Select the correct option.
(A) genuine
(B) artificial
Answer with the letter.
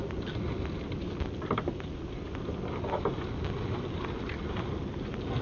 A